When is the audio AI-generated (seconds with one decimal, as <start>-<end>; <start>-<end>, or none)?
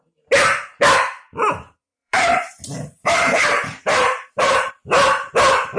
1.9-4.7